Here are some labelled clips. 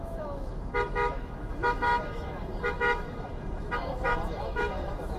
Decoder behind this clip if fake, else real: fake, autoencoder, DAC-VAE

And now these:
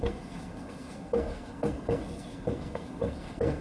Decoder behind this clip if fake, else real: fake, codec, SNAC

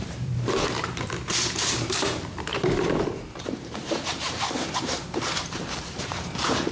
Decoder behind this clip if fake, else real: fake, vocoder, BigVGAN v2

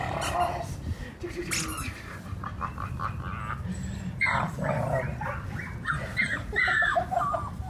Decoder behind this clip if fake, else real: real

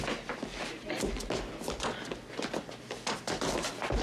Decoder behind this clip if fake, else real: real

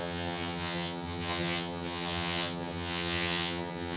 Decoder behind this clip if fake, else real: fake, vocoder, HiFi-GAN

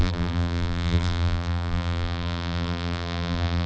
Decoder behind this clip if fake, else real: fake, vocoder, BigVGAN v2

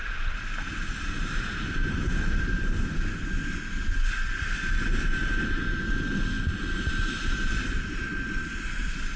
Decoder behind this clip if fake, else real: real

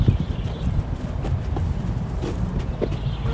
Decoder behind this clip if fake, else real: real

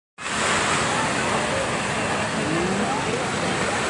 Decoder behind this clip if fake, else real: real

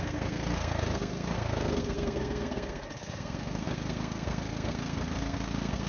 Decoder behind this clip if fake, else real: fake, codec, SNAC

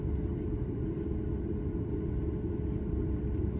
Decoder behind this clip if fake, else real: real